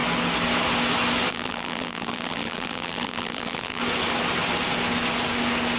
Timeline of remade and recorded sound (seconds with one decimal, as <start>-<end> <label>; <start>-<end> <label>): 0.0-1.3 recorded; 1.3-3.8 remade; 3.8-5.8 recorded